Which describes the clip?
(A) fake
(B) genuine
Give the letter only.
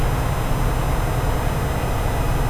B